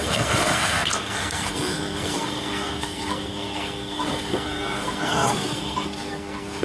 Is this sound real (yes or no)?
no